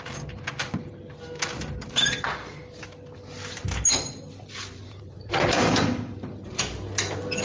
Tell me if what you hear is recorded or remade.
recorded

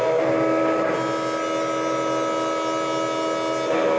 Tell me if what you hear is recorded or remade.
recorded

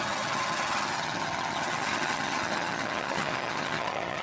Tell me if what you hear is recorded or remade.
remade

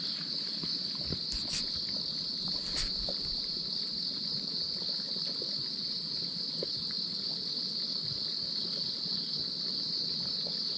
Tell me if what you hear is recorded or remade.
recorded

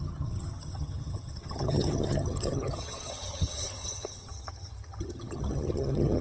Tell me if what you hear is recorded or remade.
remade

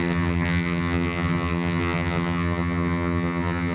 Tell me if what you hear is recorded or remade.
remade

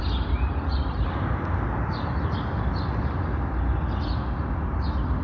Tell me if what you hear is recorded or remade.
recorded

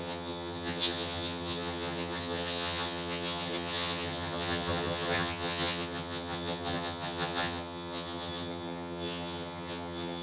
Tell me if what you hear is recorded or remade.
remade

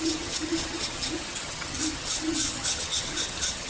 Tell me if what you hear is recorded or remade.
remade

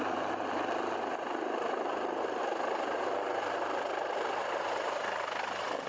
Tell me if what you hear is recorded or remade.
recorded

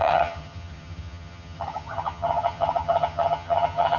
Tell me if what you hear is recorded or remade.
remade